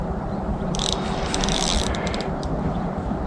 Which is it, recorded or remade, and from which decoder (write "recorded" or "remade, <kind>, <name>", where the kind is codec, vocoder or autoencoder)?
recorded